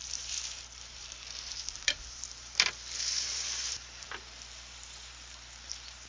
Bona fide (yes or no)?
no